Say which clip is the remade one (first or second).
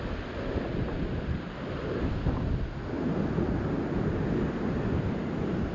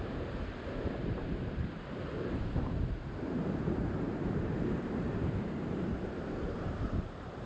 second